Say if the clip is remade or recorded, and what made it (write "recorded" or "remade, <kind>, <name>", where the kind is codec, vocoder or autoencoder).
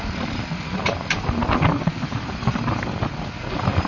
recorded